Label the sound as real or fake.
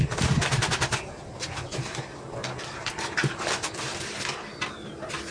real